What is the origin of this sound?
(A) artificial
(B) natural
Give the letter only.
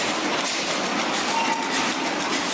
B